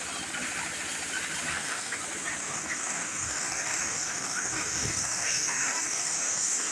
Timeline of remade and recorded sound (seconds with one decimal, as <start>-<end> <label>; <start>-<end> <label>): 0.0-1.5 recorded; 1.5-2.0 remade; 2.0-2.4 recorded; 2.4-6.7 remade